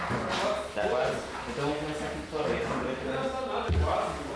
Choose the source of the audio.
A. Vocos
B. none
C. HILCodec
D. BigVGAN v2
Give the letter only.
B